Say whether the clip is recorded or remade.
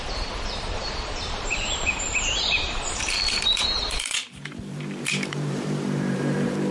remade